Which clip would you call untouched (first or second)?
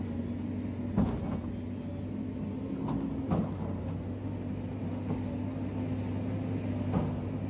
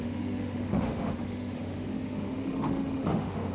first